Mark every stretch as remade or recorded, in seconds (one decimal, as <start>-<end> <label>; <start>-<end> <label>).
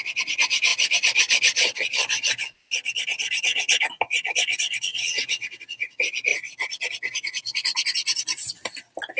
0.0-4.9 recorded; 4.9-5.6 remade; 5.6-9.2 recorded